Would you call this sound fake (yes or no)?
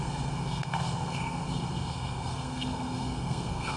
yes